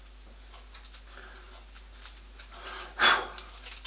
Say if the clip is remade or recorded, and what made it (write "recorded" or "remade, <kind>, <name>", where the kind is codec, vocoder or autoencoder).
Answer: recorded